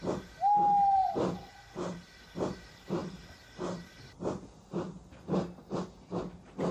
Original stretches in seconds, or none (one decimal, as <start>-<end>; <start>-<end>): 0.0-6.7